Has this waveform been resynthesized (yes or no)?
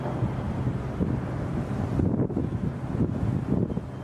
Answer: no